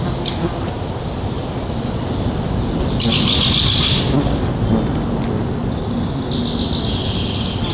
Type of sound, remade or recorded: recorded